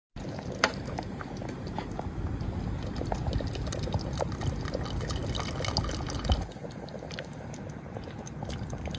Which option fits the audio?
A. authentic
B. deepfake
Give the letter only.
A